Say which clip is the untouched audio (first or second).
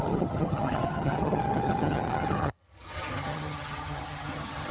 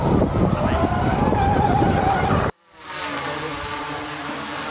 second